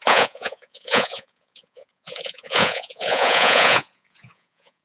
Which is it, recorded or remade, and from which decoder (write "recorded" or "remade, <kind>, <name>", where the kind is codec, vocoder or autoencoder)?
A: remade, vocoder, Vocos